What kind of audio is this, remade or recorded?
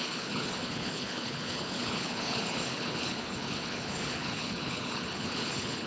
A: remade